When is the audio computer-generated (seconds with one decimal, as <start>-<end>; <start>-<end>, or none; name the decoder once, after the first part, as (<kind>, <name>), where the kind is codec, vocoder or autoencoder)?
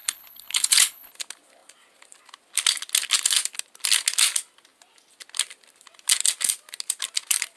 0.0-1.1 (codec, HILCodec)